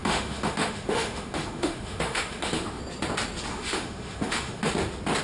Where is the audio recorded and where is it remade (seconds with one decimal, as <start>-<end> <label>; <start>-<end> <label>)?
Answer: 0.0-2.8 remade; 2.8-3.5 recorded; 3.5-4.7 remade; 4.7-5.2 recorded